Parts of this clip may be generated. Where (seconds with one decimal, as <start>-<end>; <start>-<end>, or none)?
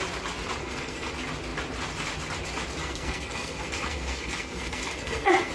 0.6-1.1; 2.8-5.5